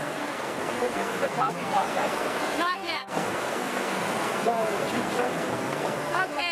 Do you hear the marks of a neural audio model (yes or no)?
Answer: yes